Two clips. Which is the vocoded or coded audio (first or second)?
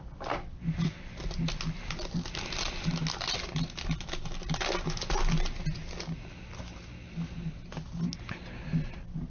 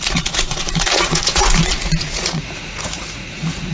second